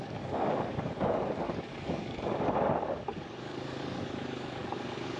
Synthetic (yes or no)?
yes